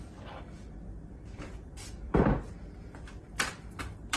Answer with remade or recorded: remade